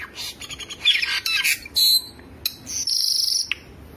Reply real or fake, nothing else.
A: real